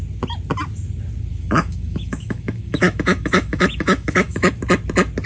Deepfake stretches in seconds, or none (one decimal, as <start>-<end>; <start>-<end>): 1.3-4.5